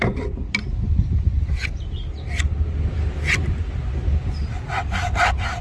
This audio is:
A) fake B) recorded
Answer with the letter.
B